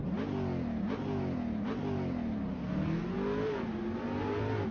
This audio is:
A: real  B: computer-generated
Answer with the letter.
A